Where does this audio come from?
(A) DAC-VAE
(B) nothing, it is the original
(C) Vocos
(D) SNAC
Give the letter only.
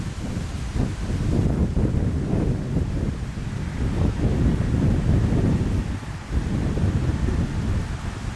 B